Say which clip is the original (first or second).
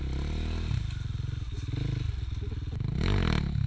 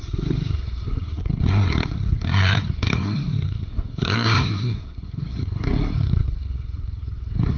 first